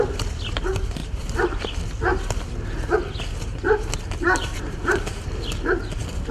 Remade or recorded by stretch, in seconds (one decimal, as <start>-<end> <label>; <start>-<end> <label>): 0.0-1.0 recorded; 1.0-1.8 remade; 1.8-3.5 recorded; 3.5-5.4 remade; 5.4-6.3 recorded